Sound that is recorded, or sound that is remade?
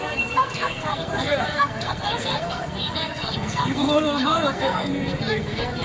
remade